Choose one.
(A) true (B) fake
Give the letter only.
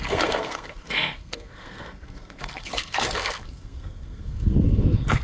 B